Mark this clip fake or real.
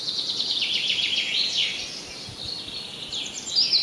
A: real